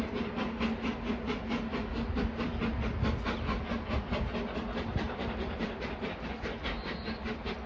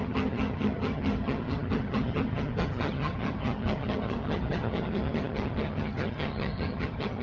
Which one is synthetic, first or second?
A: second